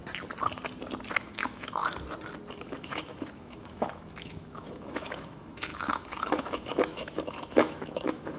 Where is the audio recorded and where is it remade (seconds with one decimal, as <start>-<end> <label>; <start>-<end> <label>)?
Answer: 0.0-1.2 recorded; 1.2-1.8 remade; 1.8-2.6 recorded; 2.6-8.4 remade